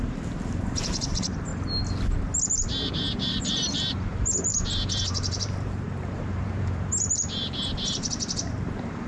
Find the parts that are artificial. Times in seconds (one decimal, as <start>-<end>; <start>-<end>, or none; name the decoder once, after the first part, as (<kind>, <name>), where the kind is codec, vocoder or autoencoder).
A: 0.0-1.5 (vocoder, BigVGAN v2); 2.5-9.1